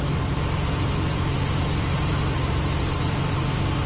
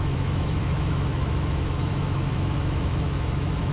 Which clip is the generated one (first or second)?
second